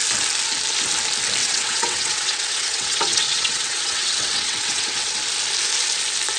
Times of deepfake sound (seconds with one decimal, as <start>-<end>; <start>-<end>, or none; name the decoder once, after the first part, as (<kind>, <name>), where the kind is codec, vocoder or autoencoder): 1.4-5.2 (vocoder, WaveNeXt)